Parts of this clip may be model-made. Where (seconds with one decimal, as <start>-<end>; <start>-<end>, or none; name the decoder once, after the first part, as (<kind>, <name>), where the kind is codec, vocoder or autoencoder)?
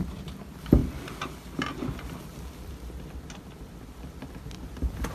0.0-0.8 (vocoder, BigVGAN v2); 3.9-5.1